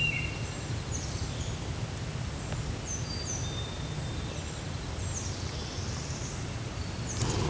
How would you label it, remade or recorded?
recorded